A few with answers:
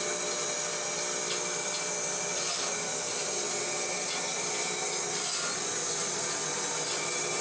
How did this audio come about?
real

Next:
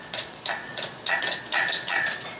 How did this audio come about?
fake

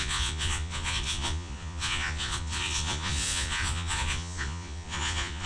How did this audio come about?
fake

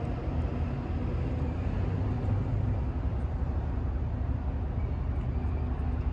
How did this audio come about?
real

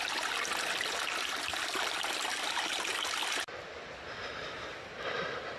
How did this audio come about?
real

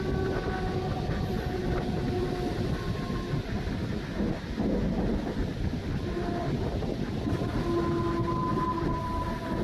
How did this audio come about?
real